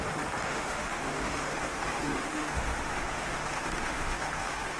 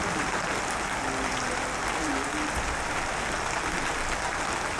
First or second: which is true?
second